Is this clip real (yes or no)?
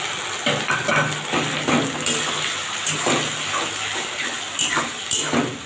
yes